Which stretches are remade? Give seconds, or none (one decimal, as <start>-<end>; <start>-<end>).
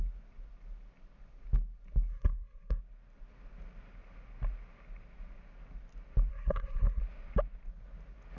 2.1-2.8; 6.3-7.0